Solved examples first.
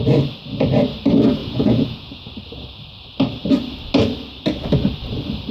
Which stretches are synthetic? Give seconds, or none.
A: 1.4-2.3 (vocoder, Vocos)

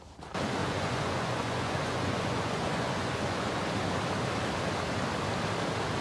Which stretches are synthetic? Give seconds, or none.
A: 0.6-3.6 (vocoder, Vocos)

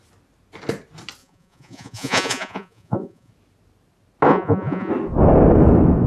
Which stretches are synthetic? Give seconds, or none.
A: 1.2-3.3 (vocoder, Vocos); 4.3-4.9

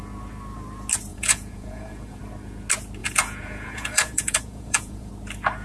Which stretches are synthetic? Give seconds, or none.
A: 1.1-2.2 (vocoder, Vocos); 3.0-5.1